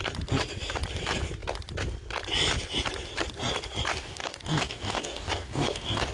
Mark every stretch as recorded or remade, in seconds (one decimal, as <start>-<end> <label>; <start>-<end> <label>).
0.0-3.9 recorded; 3.9-6.1 remade